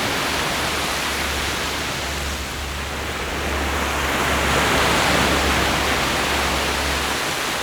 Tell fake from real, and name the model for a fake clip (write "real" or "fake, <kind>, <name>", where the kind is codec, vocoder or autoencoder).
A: real